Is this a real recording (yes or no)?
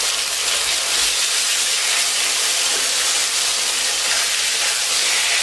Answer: yes